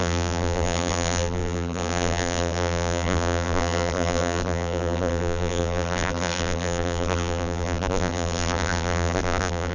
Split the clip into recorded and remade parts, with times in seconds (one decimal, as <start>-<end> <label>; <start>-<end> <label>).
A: 0.0-9.7 remade

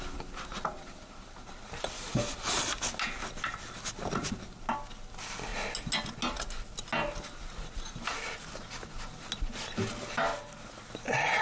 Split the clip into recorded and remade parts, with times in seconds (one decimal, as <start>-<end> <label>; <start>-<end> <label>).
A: 0.0-11.4 recorded

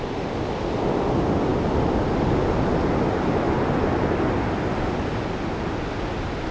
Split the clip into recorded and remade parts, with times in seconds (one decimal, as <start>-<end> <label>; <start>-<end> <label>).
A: 0.0-6.5 recorded

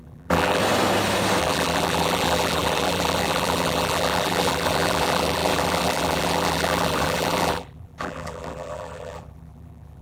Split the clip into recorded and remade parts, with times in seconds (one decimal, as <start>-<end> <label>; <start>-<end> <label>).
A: 0.0-0.6 remade; 0.6-1.4 recorded; 1.4-10.0 remade